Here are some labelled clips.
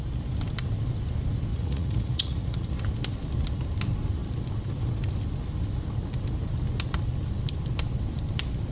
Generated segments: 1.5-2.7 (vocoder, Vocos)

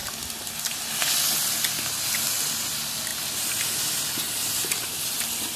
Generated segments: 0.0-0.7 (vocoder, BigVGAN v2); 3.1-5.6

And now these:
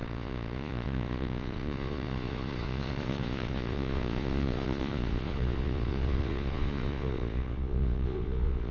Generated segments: 0.0-8.7 (vocoder, Vocos)